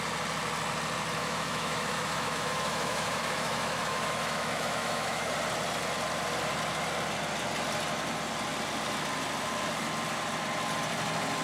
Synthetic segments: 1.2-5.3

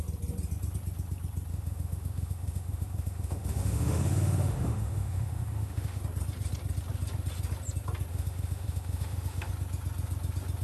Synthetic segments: 1.5-6.0; 8.1-9.5

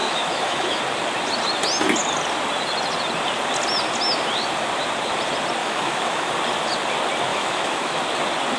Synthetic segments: 0.0-0.8; 5.6-6.3; 7.3-8.0

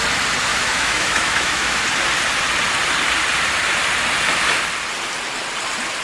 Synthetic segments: 0.5-1.8